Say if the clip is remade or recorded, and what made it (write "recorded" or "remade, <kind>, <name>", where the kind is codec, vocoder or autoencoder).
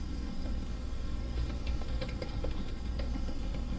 remade, codec, SNAC